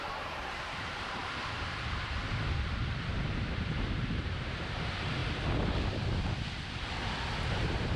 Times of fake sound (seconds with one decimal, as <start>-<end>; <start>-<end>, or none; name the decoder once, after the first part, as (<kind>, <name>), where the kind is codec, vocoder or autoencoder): 0.0-1.2 (vocoder, BigVGAN v2); 2.4-5.2; 7.5-8.0